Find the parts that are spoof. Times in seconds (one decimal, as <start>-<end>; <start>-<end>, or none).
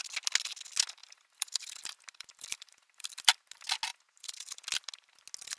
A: 1.0-3.4; 3.9-4.6